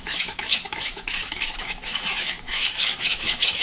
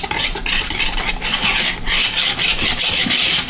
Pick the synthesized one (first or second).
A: first